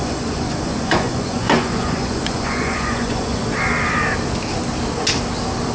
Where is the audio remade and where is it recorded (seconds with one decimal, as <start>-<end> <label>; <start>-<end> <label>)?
0.0-3.4 remade; 3.4-5.7 recorded

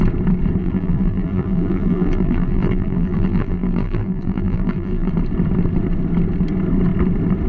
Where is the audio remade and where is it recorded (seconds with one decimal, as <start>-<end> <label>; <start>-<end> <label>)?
0.0-0.6 recorded; 0.6-5.1 remade; 5.1-7.5 recorded

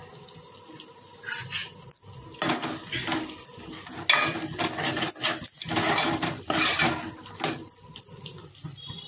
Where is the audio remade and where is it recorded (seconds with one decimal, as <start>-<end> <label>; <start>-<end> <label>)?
0.0-9.1 recorded

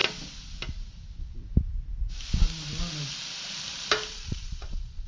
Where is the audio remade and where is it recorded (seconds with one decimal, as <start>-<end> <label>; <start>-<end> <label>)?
0.0-4.1 recorded; 4.1-5.1 remade

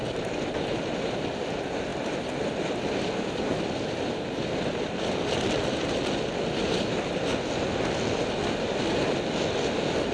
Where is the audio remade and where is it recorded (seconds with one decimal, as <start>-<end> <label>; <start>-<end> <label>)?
0.0-1.2 remade; 1.2-1.9 recorded; 1.9-6.0 remade; 6.0-10.1 recorded

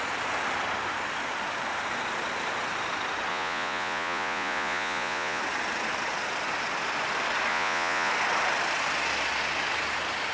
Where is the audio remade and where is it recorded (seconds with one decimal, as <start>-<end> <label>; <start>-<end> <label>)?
0.0-3.3 recorded; 3.3-5.4 remade; 5.4-7.5 recorded; 7.5-8.1 remade; 8.1-10.3 recorded

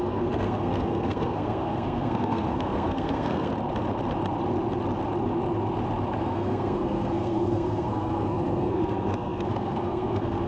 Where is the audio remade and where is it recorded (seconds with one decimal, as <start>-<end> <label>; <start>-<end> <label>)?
0.0-3.5 remade; 3.5-6.2 recorded; 6.2-10.5 remade

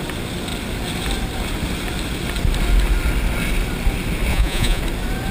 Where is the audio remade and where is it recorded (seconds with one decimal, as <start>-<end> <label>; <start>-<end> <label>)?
0.0-4.3 recorded; 4.3-4.8 remade; 4.8-5.3 recorded